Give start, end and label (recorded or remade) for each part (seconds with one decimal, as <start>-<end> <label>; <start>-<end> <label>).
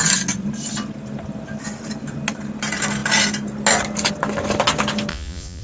0.0-5.1 recorded; 5.1-5.6 remade